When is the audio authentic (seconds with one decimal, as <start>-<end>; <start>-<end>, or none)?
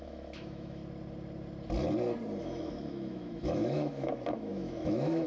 0.8-2.4